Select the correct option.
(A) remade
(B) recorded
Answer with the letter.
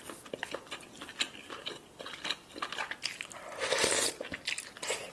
B